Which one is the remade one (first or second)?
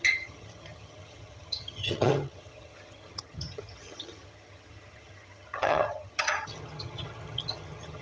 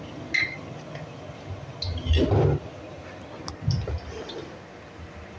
first